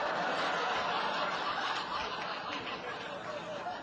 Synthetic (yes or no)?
no